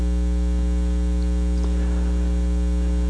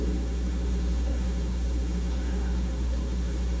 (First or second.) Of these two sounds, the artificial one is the second